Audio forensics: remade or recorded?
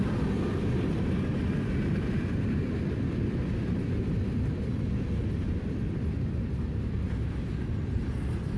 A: recorded